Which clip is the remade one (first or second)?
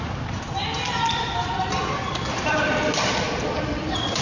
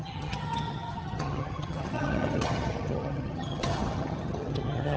second